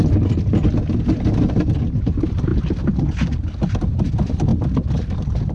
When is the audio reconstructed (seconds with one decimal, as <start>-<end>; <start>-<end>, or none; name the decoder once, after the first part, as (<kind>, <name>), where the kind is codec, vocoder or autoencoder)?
none